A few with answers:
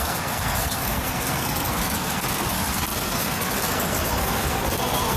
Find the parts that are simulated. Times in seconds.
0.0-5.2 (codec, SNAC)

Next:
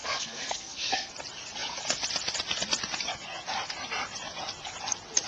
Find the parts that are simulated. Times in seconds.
0.0-1.1 (codec, SNAC)

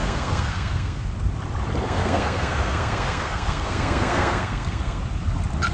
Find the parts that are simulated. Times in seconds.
0.0-1.1 (codec, SNAC); 1.8-5.0